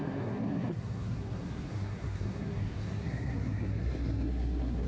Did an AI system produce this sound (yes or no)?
yes